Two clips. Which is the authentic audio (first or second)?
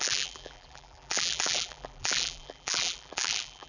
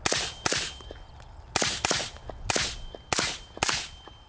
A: second